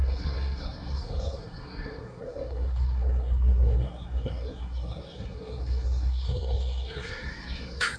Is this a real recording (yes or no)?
no